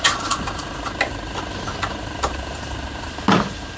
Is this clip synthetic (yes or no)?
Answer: no